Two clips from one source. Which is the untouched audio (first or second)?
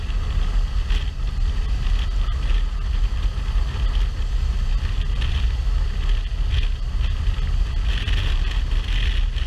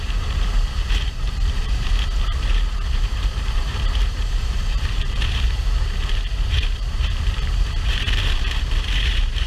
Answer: first